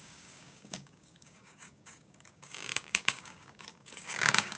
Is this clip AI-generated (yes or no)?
yes